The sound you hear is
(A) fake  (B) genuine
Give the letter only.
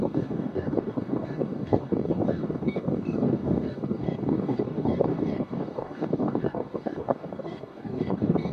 A